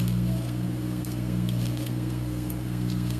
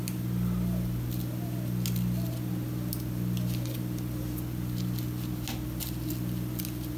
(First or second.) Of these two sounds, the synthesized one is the first